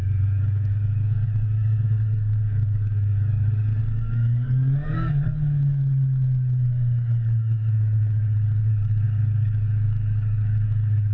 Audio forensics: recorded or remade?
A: remade